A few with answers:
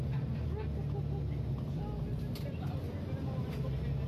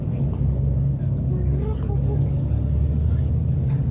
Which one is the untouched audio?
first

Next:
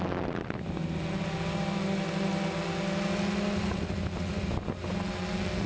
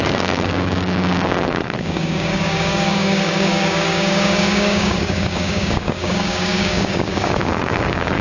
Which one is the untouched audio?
first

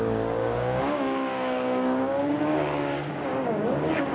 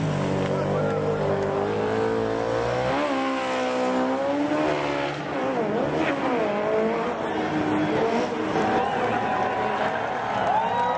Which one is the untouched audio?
second